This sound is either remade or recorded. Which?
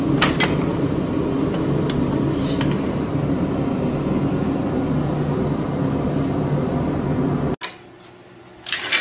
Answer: recorded